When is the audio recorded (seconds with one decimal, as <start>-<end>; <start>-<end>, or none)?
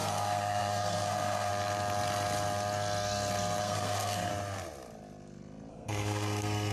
1.5-3.6; 4.3-5.7